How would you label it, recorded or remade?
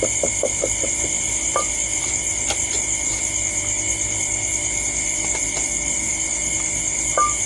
recorded